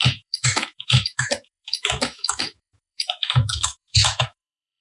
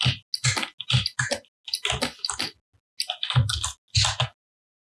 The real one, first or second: second